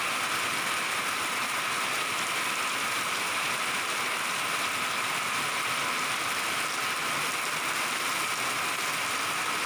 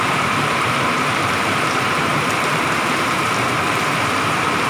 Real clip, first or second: first